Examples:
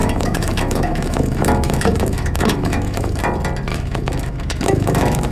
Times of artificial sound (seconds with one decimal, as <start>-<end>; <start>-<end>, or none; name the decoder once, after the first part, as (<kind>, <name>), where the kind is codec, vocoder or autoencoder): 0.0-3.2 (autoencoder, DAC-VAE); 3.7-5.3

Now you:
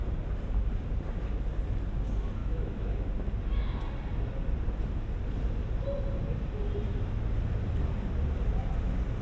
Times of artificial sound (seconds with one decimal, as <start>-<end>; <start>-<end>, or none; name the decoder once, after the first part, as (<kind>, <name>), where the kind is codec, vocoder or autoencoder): 2.4-3.1 (autoencoder, DAC-VAE)

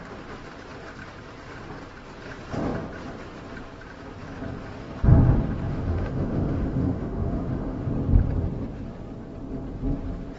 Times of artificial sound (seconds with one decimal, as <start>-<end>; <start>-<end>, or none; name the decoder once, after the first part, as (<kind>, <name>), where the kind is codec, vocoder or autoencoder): 5.7-7.9 (autoencoder, DAC-VAE)

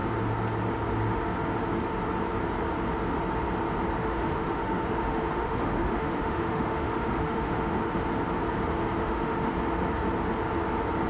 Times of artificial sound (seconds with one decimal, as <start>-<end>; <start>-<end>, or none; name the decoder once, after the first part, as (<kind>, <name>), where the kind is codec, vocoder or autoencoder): 4.0-8.0 (autoencoder, DAC-VAE); 9.0-9.6